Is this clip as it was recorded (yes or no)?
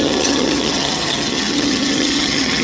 no